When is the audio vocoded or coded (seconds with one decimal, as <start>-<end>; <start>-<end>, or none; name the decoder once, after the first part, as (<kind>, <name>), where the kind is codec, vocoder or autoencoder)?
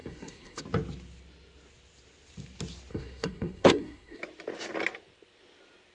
0.0-0.6 (codec, SNAC); 2.9-4.2